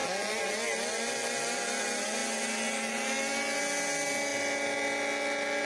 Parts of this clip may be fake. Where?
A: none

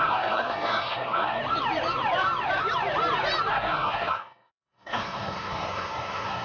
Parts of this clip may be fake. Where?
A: 0.0-1.4 (codec, SNAC); 3.5-6.4

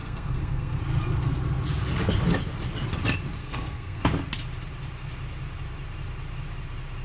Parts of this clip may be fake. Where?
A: 0.0-0.8 (codec, SNAC); 3.4-4.0

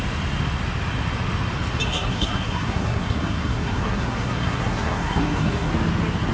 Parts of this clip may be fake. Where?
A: 1.9-5.7 (codec, SNAC)

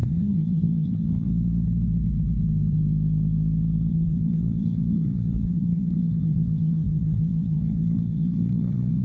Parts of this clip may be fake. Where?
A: 0.0-1.3 (codec, SNAC); 3.9-9.0

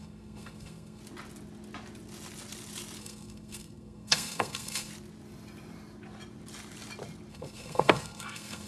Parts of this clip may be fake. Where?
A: 0.0-1.0 (codec, SNAC); 3.0-4.9; 7.3-8.7

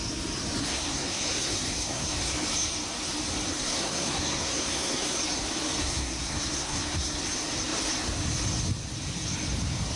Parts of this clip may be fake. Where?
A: 0.6-2.3 (codec, SNAC); 3.5-5.2; 5.8-7.2

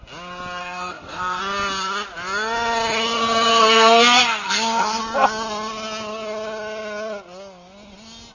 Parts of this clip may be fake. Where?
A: 0.6-1.4 (codec, SNAC); 3.5-5.0